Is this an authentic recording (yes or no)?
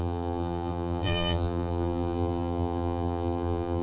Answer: no